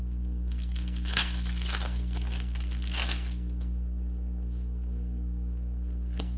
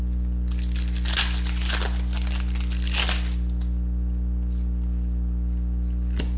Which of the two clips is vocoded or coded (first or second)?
first